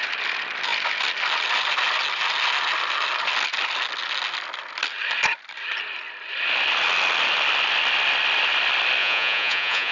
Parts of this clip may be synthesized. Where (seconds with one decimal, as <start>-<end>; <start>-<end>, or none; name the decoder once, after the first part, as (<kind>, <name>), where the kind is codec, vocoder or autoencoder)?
9.0-9.9 (vocoder, Vocos)